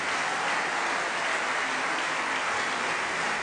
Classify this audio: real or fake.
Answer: real